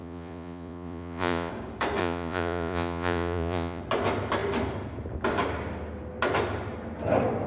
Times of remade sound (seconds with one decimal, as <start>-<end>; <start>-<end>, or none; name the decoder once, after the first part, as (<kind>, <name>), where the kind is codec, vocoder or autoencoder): 0.0-1.5 (vocoder, Vocos); 2.0-3.8

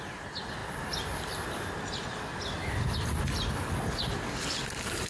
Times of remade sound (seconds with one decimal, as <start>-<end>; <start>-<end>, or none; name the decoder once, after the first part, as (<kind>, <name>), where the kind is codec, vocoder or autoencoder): none

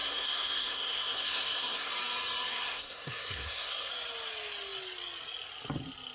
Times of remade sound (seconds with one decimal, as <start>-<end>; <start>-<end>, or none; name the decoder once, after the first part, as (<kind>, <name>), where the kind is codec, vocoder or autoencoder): 0.0-1.9 (codec, SNAC); 2.5-3.9

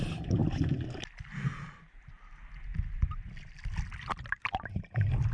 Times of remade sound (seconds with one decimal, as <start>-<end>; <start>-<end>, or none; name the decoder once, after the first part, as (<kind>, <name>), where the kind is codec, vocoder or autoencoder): none